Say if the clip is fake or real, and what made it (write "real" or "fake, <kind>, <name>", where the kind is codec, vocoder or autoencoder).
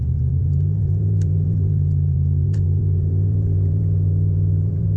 fake, vocoder, BigVGAN v2